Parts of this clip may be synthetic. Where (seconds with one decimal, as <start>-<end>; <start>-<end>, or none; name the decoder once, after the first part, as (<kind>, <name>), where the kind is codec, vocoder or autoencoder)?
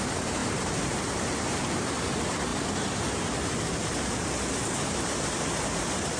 0.0-2.5 (vocoder, BigVGAN v2); 4.5-6.2